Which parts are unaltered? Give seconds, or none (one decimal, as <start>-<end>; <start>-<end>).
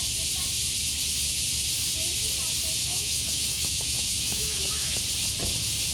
0.0-2.8; 5.0-5.9